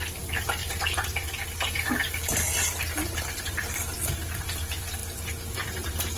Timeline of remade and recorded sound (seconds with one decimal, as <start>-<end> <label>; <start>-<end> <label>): 0.0-5.0 remade; 5.0-5.5 recorded; 5.5-6.2 remade